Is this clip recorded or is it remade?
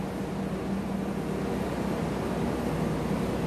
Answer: recorded